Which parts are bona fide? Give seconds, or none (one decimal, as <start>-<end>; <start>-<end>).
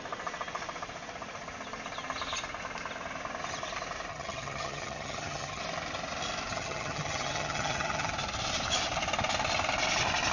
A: 0.0-4.1; 5.6-6.5; 8.1-10.3